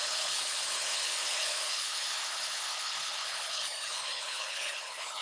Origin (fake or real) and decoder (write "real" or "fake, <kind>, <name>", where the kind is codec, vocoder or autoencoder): fake, codec, HILCodec